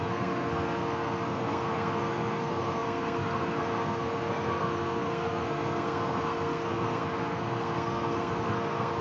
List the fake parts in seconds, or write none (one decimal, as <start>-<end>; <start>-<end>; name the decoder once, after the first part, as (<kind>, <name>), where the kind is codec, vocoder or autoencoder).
0.0-9.0 (codec, SNAC)